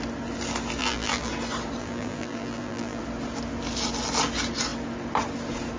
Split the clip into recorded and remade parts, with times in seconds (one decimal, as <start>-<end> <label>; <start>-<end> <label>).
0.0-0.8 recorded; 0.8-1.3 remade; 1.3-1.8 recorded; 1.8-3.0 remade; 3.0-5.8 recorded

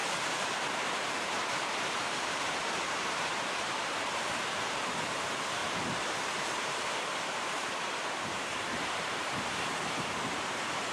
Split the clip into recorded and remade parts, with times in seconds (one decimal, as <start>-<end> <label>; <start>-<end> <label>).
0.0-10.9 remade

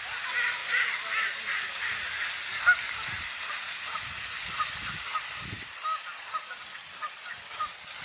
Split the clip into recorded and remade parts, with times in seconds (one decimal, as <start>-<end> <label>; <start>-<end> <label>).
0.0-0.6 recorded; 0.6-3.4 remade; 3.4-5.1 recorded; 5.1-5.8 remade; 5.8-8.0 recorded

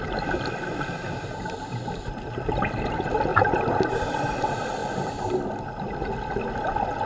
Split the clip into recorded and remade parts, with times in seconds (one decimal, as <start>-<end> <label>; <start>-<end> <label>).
0.0-3.3 recorded; 3.3-3.8 remade; 3.8-4.8 recorded; 4.8-5.3 remade; 5.3-7.1 recorded

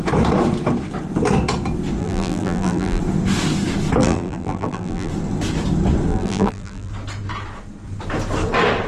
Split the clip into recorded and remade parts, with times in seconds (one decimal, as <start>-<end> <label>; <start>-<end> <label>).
0.0-2.0 recorded; 2.0-3.0 remade; 3.0-4.0 recorded; 4.0-5.1 remade; 5.1-6.1 recorded; 6.1-6.9 remade; 6.9-8.9 recorded

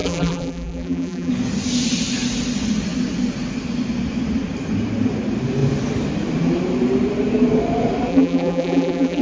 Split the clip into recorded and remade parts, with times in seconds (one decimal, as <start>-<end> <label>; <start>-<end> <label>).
0.0-1.3 remade; 1.3-8.1 recorded; 8.1-9.2 remade

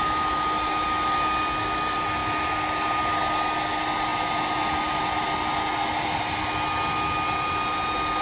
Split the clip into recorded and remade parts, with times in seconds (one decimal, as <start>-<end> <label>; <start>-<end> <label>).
0.0-8.2 recorded